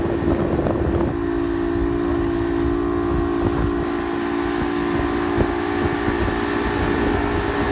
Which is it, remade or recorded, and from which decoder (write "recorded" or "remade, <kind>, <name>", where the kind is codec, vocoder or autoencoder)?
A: recorded